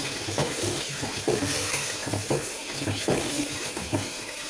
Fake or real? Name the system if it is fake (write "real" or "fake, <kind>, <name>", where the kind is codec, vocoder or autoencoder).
fake, autoencoder, DAC-VAE